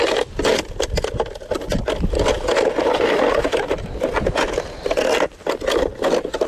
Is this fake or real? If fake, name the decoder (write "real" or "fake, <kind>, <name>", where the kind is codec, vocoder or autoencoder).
real